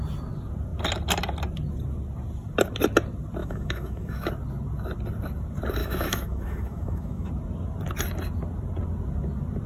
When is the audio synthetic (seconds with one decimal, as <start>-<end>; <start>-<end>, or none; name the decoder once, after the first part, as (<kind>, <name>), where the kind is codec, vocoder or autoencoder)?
3.4-4.3 (autoencoder, DAC-VAE); 5.8-7.3